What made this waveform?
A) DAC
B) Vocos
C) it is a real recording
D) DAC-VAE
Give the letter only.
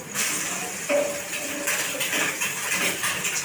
C